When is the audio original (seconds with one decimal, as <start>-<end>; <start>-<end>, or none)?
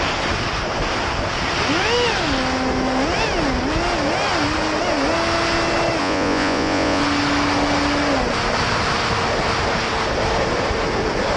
0.0-6.0; 7.0-11.4